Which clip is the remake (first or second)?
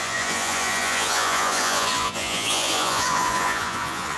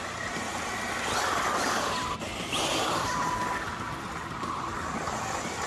first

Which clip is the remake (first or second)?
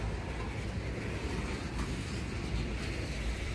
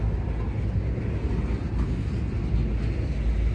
first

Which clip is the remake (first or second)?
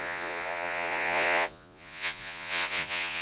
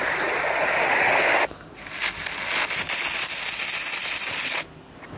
first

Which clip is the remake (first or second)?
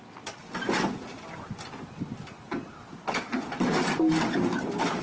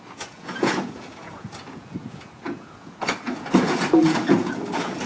second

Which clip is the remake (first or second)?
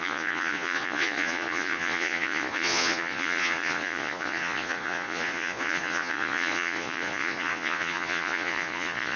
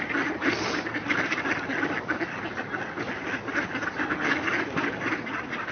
first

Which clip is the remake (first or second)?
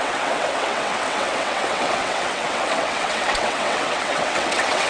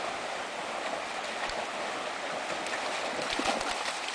first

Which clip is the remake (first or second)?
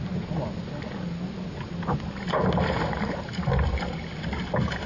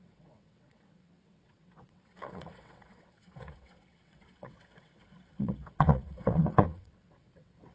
second